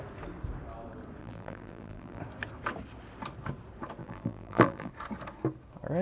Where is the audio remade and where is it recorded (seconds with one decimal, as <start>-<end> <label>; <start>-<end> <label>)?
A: 0.0-1.2 recorded; 1.2-2.2 remade; 2.2-4.0 recorded; 4.0-4.9 remade; 4.9-6.0 recorded